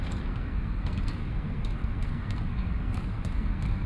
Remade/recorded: remade